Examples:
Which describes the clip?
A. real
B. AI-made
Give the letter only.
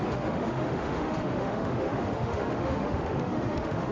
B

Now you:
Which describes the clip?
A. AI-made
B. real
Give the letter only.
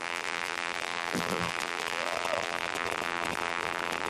A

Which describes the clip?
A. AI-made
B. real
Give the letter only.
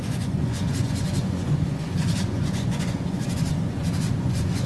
A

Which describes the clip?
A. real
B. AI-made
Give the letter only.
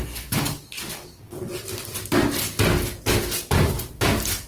A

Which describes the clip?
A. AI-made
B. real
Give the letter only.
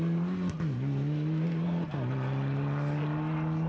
B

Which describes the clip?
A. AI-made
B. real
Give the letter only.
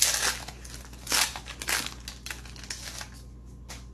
B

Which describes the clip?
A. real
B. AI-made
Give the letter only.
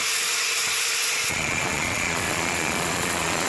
B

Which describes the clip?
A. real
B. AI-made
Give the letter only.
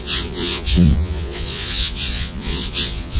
B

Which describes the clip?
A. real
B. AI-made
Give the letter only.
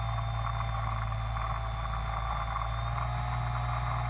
A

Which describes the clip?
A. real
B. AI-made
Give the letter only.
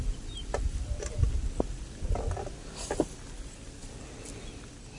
A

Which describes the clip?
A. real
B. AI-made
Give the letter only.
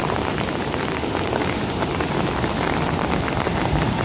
A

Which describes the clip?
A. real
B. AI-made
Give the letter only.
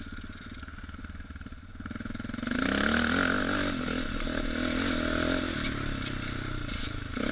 A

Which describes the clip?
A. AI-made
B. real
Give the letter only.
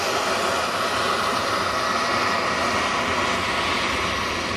B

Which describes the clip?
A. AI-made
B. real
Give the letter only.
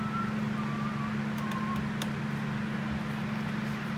B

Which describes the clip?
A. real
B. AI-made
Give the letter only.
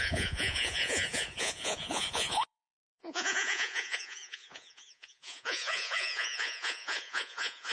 B